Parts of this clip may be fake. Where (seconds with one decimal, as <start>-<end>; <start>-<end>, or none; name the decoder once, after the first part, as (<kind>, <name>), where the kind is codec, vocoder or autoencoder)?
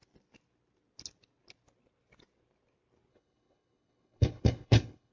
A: 3.1-5.1 (codec, HILCodec)